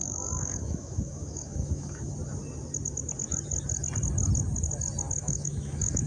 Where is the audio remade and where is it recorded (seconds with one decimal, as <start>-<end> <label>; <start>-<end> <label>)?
0.0-2.1 remade; 2.1-5.2 recorded; 5.2-6.1 remade